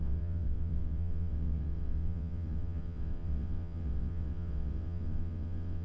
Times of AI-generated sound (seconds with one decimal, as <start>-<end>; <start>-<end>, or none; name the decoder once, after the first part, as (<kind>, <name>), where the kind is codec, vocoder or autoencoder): 0.0-5.8 (vocoder, WaveNeXt)